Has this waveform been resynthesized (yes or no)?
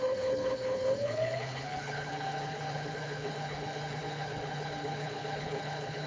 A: yes